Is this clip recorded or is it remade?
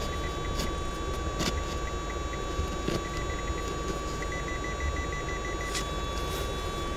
recorded